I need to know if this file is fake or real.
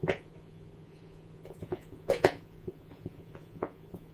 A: fake